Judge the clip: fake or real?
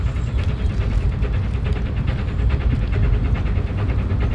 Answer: real